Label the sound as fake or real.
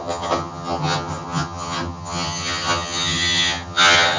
fake